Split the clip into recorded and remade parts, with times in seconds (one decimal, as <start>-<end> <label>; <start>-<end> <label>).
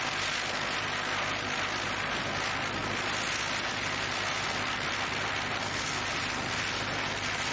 0.0-7.5 recorded